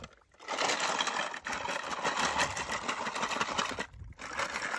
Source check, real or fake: real